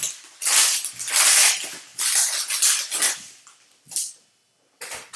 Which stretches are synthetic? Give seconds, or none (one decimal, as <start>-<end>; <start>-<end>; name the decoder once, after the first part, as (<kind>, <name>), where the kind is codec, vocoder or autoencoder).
none